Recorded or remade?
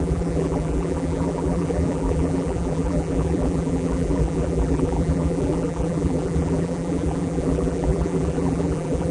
remade